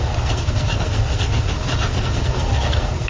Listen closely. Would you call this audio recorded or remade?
remade